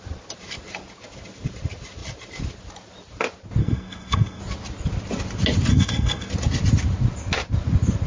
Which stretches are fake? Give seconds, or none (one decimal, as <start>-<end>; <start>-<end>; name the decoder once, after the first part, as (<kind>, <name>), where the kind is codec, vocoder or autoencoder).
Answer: 3.6-4.4 (codec, SNAC); 5.7-6.3